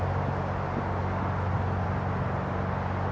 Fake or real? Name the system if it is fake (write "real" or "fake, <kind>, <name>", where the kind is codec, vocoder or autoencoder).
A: real